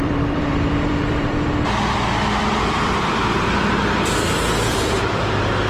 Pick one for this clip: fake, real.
fake